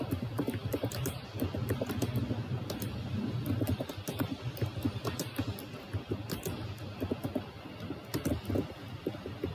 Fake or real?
real